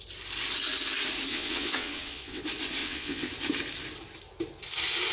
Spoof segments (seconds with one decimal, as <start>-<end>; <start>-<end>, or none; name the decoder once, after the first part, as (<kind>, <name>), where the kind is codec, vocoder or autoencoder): 1.3-2.4 (vocoder, WaveNeXt); 2.8-3.3